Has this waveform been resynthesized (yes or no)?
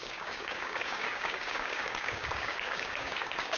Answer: yes